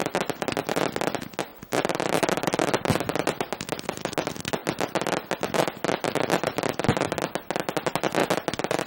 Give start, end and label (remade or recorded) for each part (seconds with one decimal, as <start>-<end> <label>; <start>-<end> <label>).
0.0-1.5 recorded; 1.5-3.0 remade; 3.0-8.9 recorded

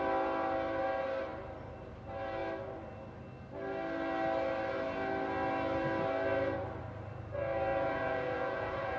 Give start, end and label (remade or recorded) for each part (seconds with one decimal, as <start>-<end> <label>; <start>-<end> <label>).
0.0-7.7 recorded; 7.7-9.0 remade

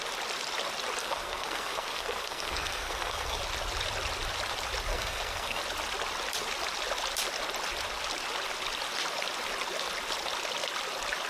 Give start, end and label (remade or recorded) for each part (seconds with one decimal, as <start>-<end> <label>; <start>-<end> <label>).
0.0-1.0 recorded; 1.0-3.4 remade; 3.4-4.9 recorded; 4.9-5.6 remade; 5.6-11.3 recorded

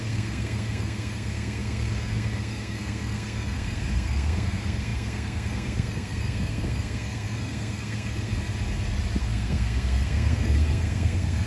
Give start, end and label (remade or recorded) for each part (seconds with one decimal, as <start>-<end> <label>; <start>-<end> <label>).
0.0-8.3 remade; 8.3-9.2 recorded; 9.2-11.5 remade

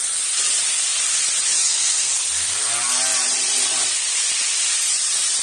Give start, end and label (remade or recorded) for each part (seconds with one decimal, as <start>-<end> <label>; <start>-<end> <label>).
0.0-1.6 recorded; 1.6-2.1 remade; 2.1-5.4 recorded

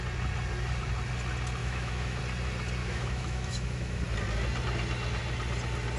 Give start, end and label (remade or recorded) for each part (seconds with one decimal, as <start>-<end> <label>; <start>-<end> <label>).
0.0-1.6 recorded; 1.6-2.2 remade; 2.2-2.8 recorded; 2.8-4.0 remade; 4.0-6.0 recorded